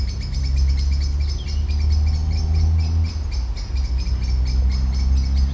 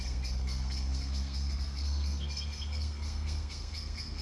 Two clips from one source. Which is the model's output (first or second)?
second